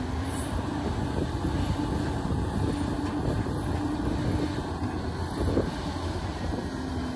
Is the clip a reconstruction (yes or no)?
no